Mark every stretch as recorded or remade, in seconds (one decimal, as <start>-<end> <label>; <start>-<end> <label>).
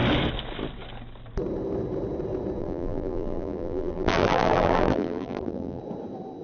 0.0-2.6 recorded; 2.6-5.8 remade; 5.8-6.4 recorded